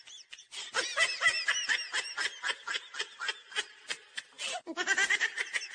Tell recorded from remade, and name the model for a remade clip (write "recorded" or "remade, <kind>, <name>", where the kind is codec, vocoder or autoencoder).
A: recorded